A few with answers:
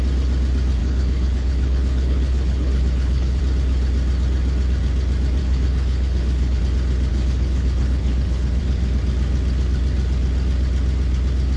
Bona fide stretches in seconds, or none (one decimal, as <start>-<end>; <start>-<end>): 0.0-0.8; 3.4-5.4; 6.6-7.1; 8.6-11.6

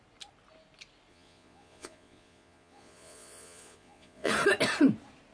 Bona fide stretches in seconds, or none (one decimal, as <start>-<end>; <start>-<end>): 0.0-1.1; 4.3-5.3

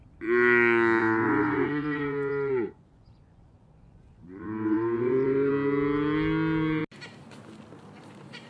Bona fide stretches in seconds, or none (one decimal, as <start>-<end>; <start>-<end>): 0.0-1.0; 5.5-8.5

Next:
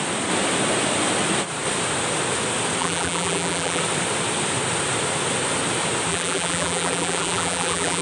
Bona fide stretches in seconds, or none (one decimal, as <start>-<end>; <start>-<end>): 0.0-2.8; 3.8-6.1

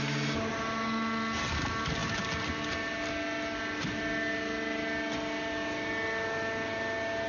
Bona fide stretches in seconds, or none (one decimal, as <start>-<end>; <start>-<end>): 0.0-7.3